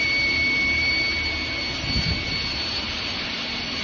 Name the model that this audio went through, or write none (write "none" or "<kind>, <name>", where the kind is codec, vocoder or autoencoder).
vocoder, BigVGAN v2